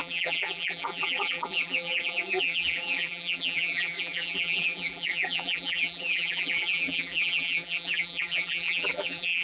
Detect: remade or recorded remade